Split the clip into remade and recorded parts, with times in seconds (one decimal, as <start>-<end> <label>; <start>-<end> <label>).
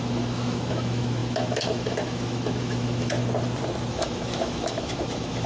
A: 0.0-3.2 remade; 3.2-3.9 recorded; 3.9-5.5 remade